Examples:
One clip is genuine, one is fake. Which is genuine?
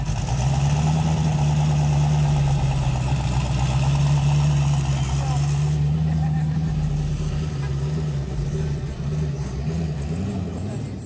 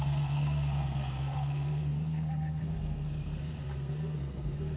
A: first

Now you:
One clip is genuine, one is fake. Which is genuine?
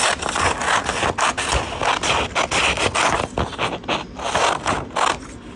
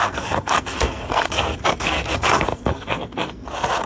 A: first